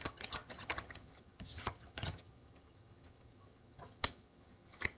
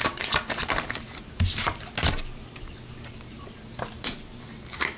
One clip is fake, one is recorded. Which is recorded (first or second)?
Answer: second